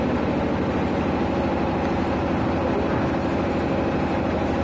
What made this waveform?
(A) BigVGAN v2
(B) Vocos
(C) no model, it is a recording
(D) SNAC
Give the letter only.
C